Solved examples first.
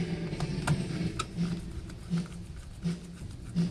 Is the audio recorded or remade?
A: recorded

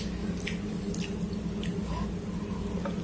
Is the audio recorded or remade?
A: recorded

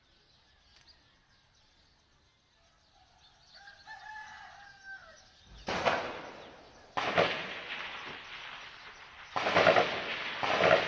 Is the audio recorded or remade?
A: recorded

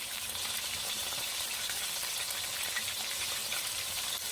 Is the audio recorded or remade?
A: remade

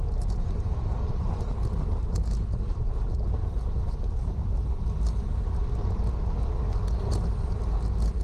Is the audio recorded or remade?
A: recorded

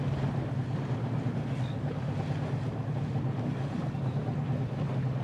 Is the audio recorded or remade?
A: recorded